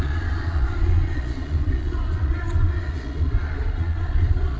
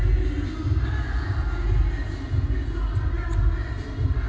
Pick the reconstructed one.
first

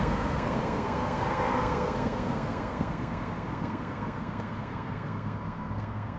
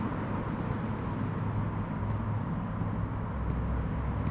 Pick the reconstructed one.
first